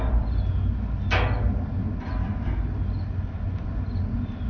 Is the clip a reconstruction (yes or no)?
no